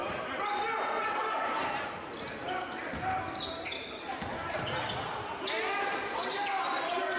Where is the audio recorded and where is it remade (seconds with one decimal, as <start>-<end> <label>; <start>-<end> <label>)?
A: 0.0-7.2 recorded